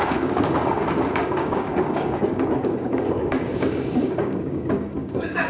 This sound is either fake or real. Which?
fake